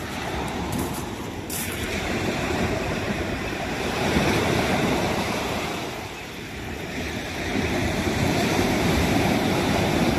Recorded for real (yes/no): no